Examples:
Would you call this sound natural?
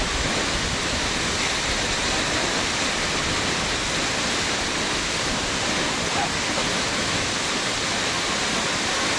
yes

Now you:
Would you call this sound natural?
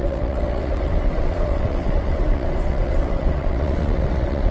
no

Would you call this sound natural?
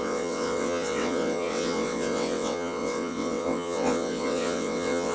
no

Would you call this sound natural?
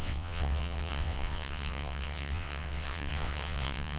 no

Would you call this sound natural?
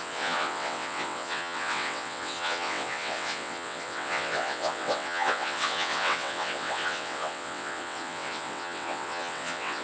no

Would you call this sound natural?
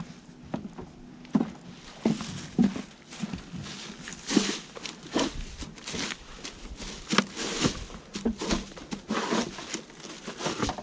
yes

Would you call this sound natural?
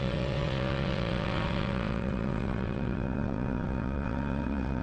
no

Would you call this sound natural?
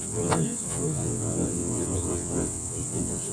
no